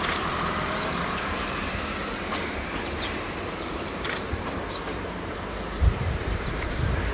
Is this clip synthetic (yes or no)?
yes